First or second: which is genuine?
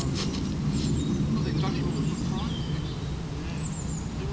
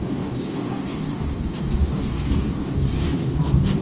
first